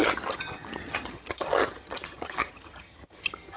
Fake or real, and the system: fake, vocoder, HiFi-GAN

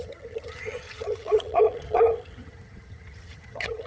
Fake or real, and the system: fake, vocoder, HiFi-GAN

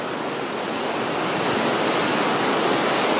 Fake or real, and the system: real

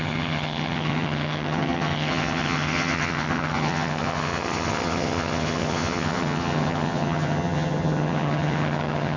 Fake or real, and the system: fake, vocoder, HiFi-GAN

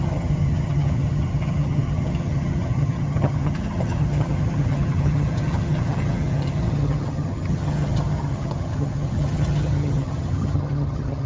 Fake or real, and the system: fake, vocoder, HiFi-GAN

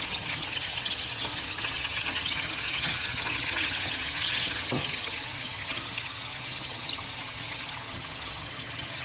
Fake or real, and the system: fake, vocoder, HiFi-GAN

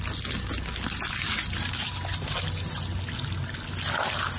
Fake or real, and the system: real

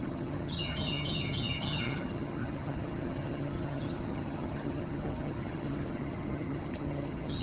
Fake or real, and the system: fake, vocoder, HiFi-GAN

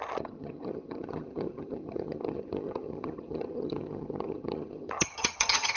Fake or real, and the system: fake, vocoder, HiFi-GAN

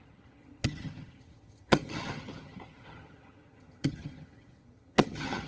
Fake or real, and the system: fake, vocoder, HiFi-GAN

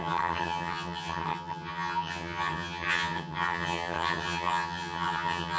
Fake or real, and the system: fake, vocoder, HiFi-GAN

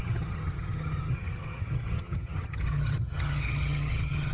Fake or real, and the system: fake, vocoder, HiFi-GAN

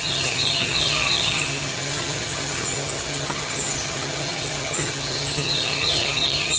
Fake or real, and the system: fake, vocoder, HiFi-GAN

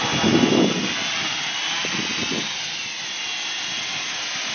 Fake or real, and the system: real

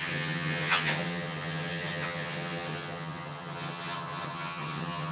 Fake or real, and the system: fake, vocoder, HiFi-GAN